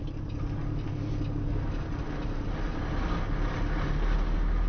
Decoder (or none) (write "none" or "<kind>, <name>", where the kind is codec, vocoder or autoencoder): none